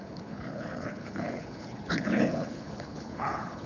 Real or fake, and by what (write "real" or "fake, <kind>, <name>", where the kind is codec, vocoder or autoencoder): fake, codec, HILCodec